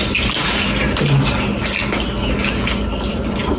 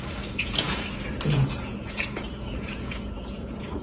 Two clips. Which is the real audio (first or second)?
first